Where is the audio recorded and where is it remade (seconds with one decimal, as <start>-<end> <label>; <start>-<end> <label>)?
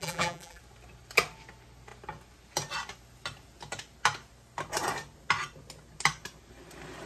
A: 0.0-0.6 remade; 0.6-7.1 recorded